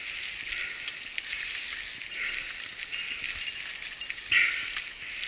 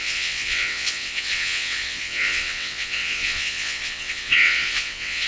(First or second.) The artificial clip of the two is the second